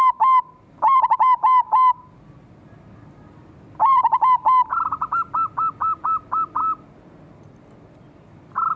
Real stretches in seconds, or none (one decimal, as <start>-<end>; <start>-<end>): 0.0-8.8

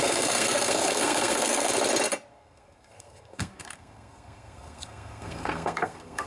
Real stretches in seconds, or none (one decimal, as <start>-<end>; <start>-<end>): 1.7-2.3

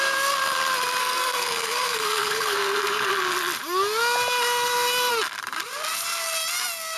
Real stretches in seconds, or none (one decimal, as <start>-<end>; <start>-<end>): 0.0-1.0; 3.1-7.0

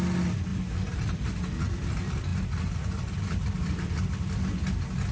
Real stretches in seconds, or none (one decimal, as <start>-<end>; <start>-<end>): 0.0-0.5; 1.3-2.3; 3.9-5.1

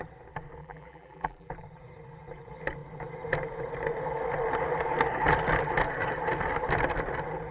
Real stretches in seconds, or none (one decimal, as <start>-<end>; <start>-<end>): 0.0-0.6; 1.5-7.5